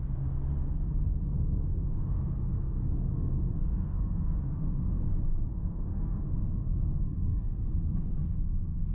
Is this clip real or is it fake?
fake